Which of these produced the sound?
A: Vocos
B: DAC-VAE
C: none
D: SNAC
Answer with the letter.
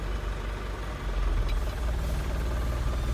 C